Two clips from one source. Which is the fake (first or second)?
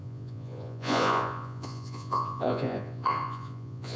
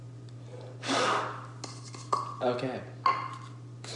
first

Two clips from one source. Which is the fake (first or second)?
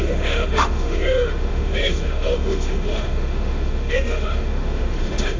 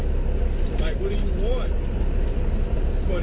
first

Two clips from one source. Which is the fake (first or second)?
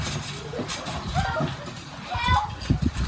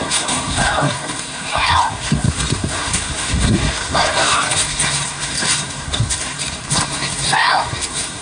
second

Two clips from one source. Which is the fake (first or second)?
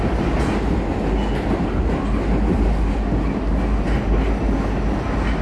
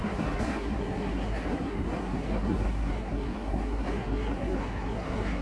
second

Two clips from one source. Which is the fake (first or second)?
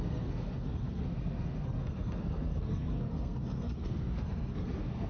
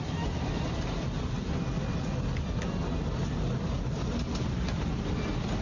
first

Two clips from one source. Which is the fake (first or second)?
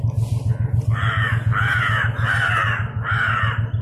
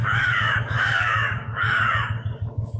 second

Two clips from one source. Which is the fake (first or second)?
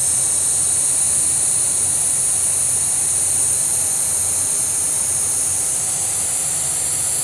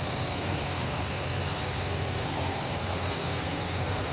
second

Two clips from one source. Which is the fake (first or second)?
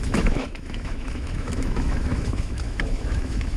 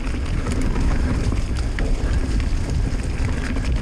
first